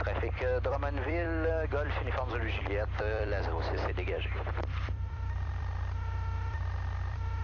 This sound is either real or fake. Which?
fake